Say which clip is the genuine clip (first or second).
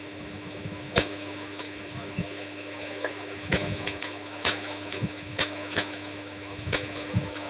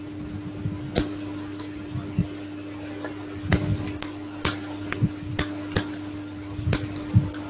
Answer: second